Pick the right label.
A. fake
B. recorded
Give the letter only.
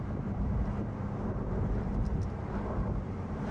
A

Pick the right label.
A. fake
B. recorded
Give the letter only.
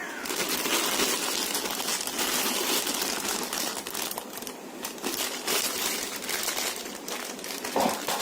B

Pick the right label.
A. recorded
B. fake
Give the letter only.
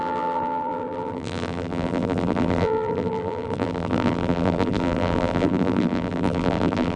B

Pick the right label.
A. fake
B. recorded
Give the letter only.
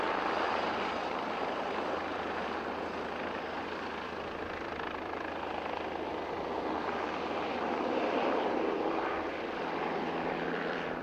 A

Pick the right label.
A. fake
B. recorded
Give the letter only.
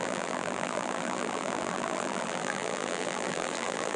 A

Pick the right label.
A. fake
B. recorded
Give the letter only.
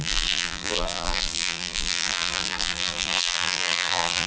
A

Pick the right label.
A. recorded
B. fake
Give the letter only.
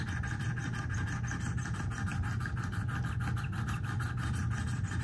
A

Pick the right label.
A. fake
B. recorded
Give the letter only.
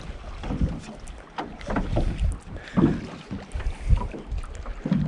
B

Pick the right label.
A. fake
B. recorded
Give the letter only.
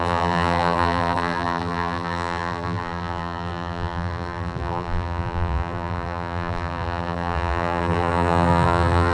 A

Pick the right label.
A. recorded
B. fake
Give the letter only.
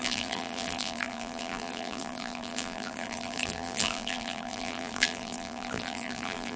B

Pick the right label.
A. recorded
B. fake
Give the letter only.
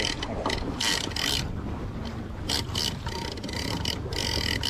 A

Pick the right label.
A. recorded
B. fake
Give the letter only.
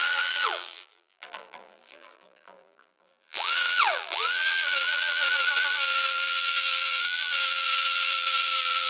B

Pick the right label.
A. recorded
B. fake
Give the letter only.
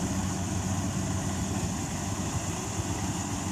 A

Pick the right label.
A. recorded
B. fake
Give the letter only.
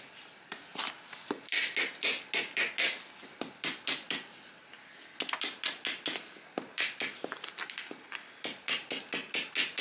A